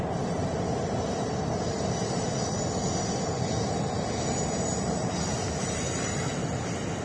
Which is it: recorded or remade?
recorded